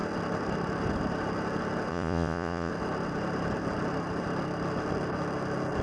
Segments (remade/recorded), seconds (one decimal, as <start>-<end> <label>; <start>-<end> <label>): 0.0-1.9 recorded; 1.9-2.7 remade; 2.7-5.8 recorded